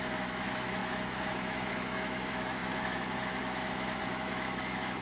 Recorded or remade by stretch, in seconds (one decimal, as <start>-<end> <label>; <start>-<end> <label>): 0.0-5.0 remade